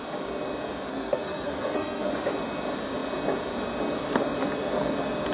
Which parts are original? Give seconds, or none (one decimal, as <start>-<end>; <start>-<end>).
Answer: 0.0-0.9; 2.1-5.3